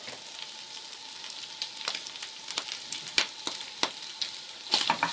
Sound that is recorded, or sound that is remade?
recorded